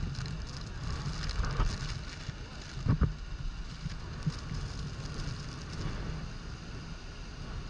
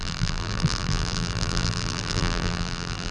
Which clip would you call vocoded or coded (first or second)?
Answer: second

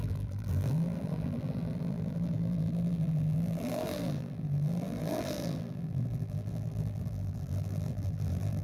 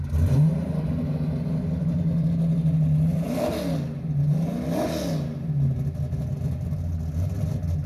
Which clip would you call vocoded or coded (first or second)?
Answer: first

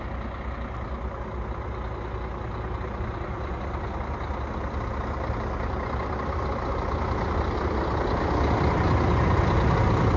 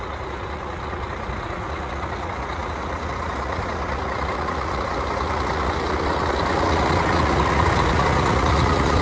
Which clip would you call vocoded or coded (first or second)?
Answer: second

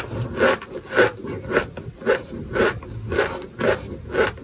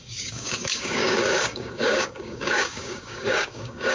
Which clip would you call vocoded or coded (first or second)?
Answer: second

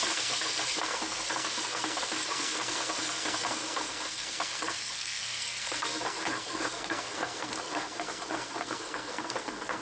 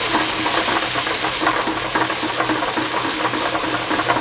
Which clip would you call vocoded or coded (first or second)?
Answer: first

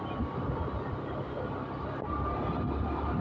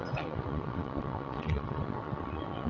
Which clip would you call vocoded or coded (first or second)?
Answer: second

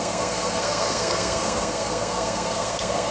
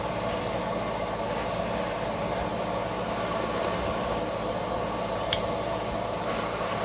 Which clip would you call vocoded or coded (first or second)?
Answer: first